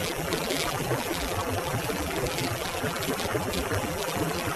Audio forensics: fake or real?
fake